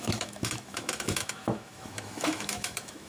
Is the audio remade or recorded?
remade